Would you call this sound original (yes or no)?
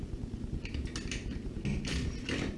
yes